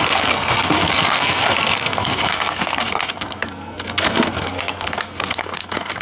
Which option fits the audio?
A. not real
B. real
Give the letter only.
A